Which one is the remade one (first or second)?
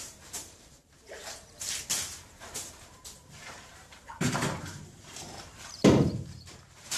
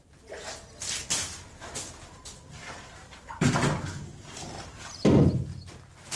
first